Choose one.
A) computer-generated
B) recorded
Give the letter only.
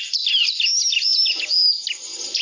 B